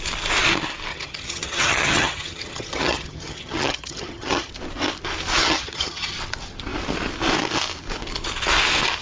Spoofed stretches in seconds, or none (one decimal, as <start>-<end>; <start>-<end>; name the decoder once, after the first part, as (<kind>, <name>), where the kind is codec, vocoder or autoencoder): 0.9-4.5 (vocoder, HiFi-GAN); 5.4-6.1